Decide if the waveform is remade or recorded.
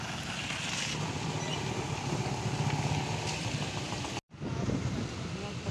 recorded